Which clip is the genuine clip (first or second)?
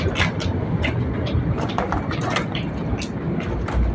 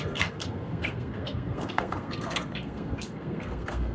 first